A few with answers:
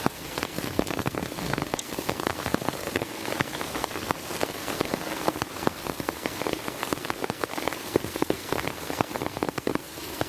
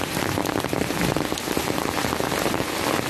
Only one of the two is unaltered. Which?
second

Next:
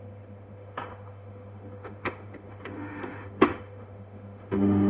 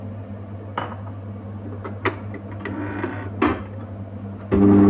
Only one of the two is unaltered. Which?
second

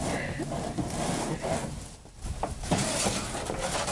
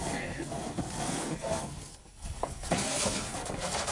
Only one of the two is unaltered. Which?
first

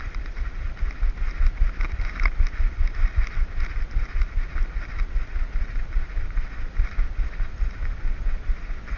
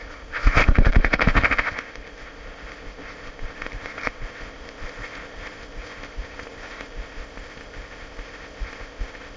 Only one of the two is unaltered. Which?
first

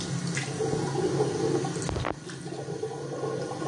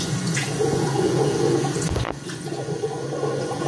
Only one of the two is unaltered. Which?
first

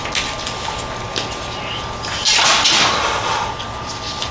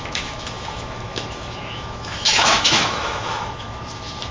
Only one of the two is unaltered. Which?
first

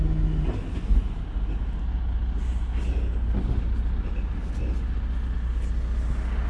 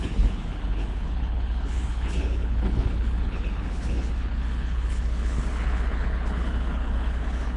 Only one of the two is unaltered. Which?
first